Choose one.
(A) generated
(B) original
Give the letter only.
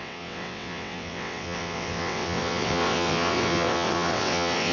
A